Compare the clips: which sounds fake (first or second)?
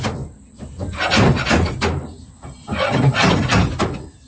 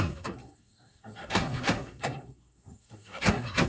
second